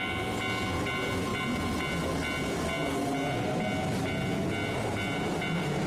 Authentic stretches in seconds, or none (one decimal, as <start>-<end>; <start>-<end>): 0.0-5.9